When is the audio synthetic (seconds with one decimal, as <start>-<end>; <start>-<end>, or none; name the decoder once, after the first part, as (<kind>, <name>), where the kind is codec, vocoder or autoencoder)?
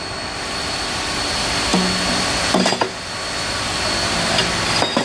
none